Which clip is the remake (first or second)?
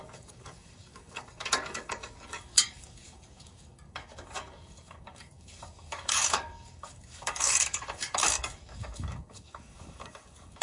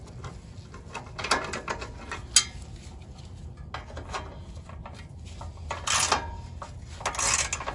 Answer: first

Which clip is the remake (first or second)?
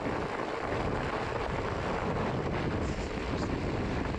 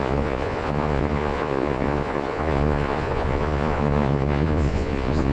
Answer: second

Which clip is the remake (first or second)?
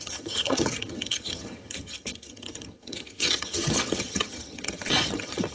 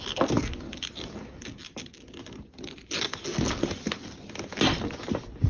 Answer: first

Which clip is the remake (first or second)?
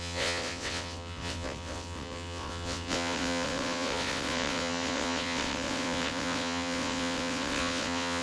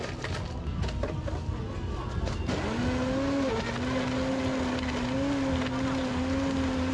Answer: first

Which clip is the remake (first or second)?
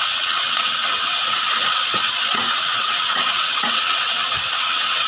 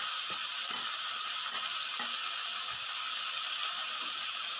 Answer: first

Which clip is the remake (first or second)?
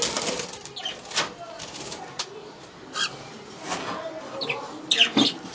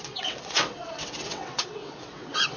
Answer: second